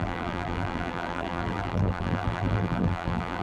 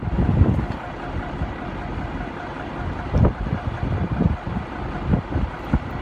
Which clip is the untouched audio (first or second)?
second